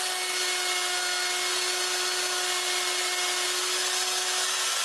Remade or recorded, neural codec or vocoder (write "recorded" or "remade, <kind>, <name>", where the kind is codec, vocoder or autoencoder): recorded